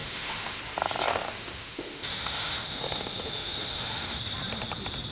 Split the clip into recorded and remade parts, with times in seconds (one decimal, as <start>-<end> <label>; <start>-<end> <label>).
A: 0.0-0.6 remade; 0.6-1.1 recorded; 1.1-4.2 remade; 4.2-5.1 recorded